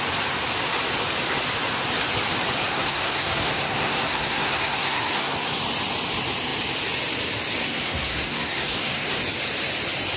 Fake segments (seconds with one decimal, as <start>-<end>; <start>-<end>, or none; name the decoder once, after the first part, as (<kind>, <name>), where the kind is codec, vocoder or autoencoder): 2.7-5.6 (codec, SNAC); 7.6-9.2